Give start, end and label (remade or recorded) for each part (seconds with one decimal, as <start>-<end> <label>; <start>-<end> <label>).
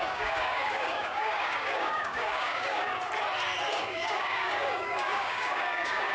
0.0-3.0 remade; 3.0-3.7 recorded; 3.7-6.1 remade